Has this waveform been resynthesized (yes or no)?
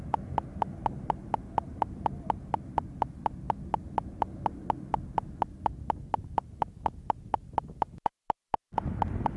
no